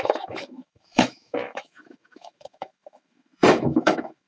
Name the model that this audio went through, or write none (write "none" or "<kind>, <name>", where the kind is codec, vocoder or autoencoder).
autoencoder, DAC-VAE